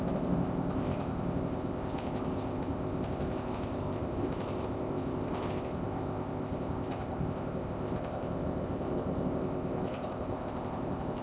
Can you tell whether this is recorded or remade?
remade